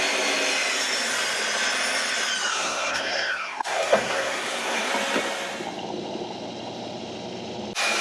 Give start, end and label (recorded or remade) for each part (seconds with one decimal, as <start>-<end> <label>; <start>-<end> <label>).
0.0-2.5 recorded; 2.5-4.9 remade; 4.9-8.0 recorded